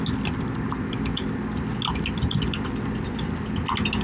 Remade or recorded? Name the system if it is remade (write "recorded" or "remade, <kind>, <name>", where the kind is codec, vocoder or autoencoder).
recorded